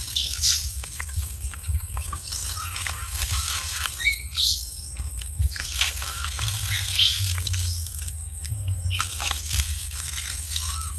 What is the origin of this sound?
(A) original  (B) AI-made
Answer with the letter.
B